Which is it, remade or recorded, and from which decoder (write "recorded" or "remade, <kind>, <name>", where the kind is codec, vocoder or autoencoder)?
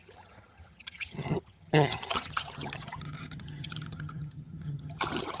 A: remade, vocoder, HiFi-GAN